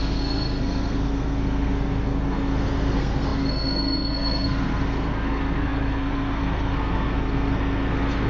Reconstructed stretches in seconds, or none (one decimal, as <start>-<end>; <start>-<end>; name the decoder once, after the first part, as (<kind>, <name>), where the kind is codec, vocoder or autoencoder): 0.0-8.3 (codec, SNAC)